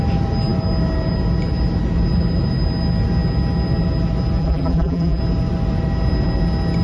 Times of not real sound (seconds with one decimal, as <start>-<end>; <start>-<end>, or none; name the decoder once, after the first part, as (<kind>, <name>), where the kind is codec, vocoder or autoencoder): 4.4-5.2 (vocoder, BigVGAN v2)